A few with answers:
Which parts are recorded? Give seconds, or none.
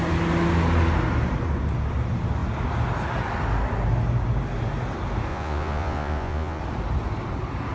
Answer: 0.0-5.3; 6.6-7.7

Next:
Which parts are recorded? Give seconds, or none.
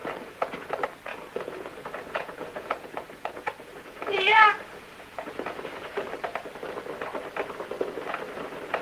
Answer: 0.7-1.1; 6.1-8.8